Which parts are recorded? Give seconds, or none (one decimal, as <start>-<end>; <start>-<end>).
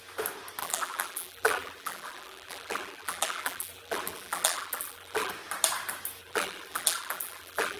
0.0-0.6; 5.3-6.2